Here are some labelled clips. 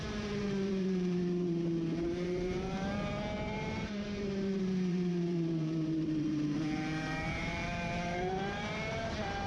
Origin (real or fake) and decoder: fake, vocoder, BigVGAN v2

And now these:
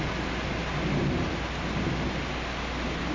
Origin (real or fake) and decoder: real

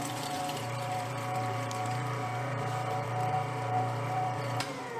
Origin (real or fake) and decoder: fake, vocoder, BigVGAN v2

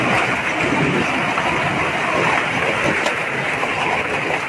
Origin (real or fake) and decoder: real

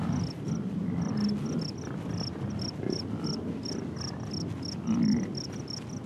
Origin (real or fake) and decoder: real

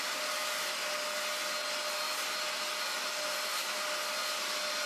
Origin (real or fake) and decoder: real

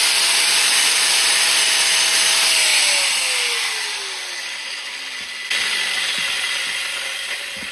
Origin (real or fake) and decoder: real